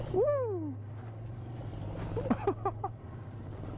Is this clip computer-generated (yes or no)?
no